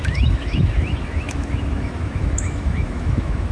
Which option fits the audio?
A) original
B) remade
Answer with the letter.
B